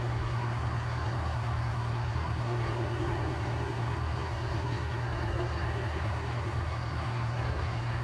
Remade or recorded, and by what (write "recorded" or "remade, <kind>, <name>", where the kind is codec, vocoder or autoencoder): remade, codec, SNAC